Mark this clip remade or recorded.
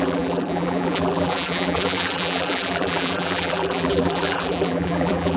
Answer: remade